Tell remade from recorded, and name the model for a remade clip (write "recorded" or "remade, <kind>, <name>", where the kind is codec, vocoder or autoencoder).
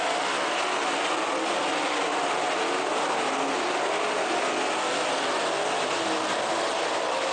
recorded